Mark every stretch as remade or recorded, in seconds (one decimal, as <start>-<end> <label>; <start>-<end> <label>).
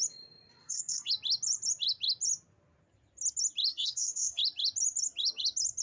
0.0-0.6 recorded; 0.6-1.1 remade; 1.1-3.7 recorded; 3.7-4.4 remade; 4.4-5.8 recorded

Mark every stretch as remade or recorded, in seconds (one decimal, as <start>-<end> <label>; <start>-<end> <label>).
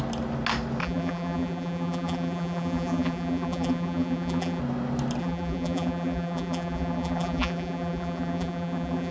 0.0-0.8 recorded; 0.8-4.6 remade; 4.6-5.2 recorded; 5.2-9.1 remade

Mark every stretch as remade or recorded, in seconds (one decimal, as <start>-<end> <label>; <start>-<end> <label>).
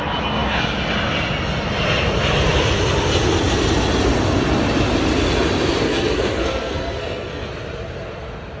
0.0-5.8 recorded; 5.8-7.5 remade; 7.5-8.6 recorded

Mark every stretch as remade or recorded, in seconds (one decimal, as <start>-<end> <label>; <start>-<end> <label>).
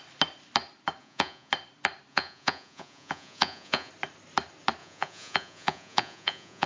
0.0-1.0 recorded; 1.0-1.5 remade; 1.5-2.1 recorded; 2.1-3.9 remade; 3.9-4.8 recorded; 4.8-6.7 remade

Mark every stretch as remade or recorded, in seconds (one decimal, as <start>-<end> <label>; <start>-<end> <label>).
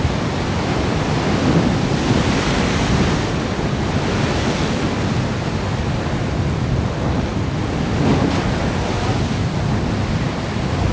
0.0-10.9 recorded